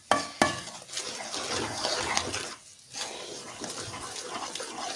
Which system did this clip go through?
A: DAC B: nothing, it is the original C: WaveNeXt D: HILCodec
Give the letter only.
B